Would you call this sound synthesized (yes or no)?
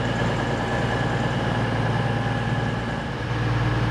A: no